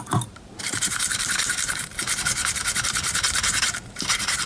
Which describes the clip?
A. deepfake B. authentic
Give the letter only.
A